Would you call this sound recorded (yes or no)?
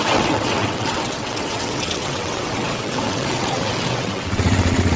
no